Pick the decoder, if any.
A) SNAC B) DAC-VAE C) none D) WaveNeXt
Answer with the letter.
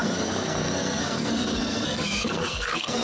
A